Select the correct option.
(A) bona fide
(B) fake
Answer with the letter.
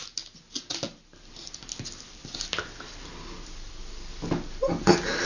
A